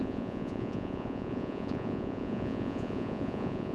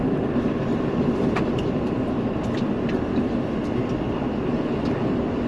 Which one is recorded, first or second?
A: second